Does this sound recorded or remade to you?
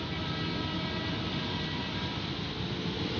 recorded